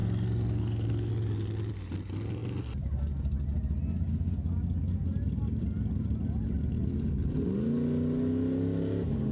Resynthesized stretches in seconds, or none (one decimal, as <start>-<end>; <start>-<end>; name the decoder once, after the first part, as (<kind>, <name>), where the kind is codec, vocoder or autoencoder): 0.0-1.1 (codec, SNAC)